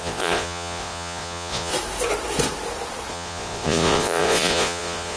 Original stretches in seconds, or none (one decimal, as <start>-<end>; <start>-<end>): 1.7-3.1